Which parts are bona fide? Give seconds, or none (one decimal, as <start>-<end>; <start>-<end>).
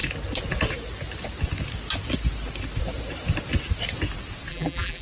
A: 0.0-4.5